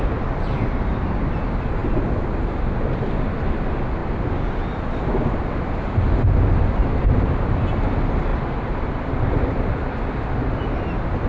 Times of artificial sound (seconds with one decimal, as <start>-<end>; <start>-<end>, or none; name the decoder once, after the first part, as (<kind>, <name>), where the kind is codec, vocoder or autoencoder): 1.8-2.9 (vocoder, BigVGAN v2); 8.3-10.5